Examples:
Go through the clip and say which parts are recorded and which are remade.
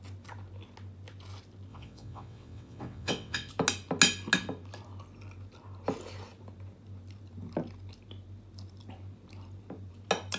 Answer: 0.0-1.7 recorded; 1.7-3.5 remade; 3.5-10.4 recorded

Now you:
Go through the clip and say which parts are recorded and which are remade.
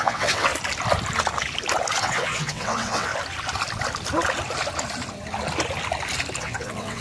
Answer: 0.0-0.5 remade; 0.5-2.0 recorded; 2.0-3.1 remade; 3.1-6.4 recorded; 6.4-7.0 remade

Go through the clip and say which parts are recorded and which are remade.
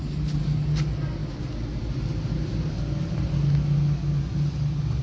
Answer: 0.0-5.0 recorded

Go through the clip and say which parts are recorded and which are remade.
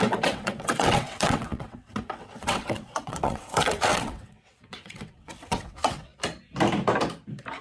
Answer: 0.0-6.1 remade; 6.1-7.6 recorded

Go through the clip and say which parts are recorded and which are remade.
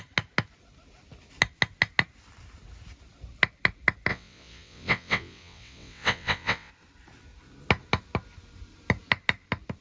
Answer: 0.0-4.1 recorded; 4.1-6.7 remade; 6.7-9.8 recorded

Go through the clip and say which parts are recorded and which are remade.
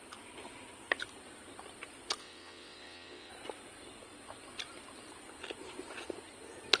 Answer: 0.0-2.2 recorded; 2.2-3.3 remade; 3.3-6.8 recorded